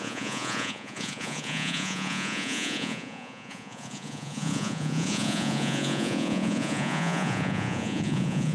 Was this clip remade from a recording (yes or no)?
yes